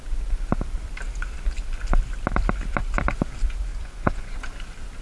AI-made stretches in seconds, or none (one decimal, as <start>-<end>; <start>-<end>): 3.7-4.3